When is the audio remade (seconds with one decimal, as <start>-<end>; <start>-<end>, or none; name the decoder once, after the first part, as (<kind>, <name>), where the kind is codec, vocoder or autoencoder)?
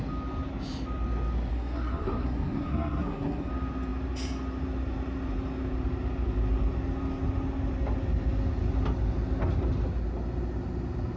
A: 1.5-3.5 (codec, SNAC)